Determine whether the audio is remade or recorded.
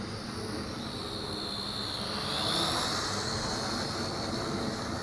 recorded